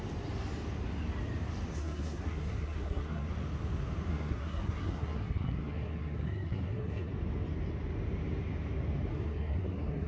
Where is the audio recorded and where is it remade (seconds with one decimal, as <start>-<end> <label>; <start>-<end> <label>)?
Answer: 0.0-1.7 recorded; 1.7-3.3 remade; 3.3-4.1 recorded; 4.1-7.1 remade; 7.1-9.1 recorded; 9.1-10.1 remade